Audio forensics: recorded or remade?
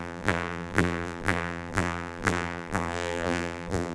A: remade